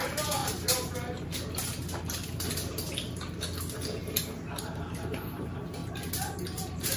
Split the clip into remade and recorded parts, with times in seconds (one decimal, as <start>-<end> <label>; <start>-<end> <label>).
0.0-0.4 remade; 0.4-4.6 recorded; 4.6-5.8 remade; 5.8-6.4 recorded; 6.4-7.0 remade